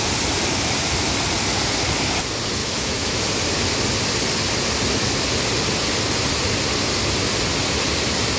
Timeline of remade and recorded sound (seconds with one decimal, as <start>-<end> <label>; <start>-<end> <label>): 0.0-2.6 recorded; 2.6-3.2 remade; 3.2-8.4 recorded